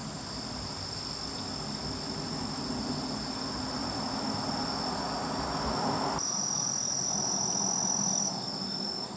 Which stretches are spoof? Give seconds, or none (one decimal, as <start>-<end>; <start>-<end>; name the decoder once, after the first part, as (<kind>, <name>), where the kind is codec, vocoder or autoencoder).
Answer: none